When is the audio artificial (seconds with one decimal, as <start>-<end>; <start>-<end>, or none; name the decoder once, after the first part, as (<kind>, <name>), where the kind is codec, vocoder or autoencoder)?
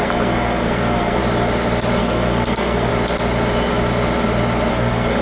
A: 0.0-1.2 (codec, SNAC); 2.0-2.9; 4.7-5.2